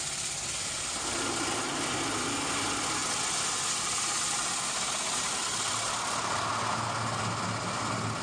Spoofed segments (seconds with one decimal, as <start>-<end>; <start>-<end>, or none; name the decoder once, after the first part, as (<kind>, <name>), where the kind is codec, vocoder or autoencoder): none